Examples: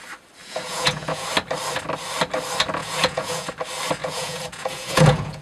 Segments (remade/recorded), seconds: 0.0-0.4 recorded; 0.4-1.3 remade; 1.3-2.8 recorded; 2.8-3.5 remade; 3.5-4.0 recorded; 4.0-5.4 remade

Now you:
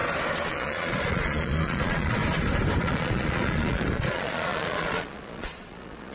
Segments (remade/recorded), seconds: 0.0-0.5 recorded; 0.5-2.2 remade; 2.2-2.8 recorded; 2.8-6.1 remade